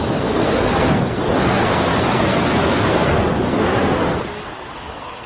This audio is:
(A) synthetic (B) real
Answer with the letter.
A